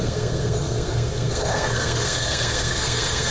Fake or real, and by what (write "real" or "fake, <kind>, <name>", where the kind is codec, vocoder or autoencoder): fake, codec, SNAC